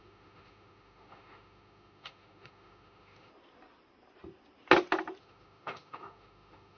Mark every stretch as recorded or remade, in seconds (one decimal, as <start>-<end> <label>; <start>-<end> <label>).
0.0-3.3 remade; 3.3-5.2 recorded; 5.2-6.8 remade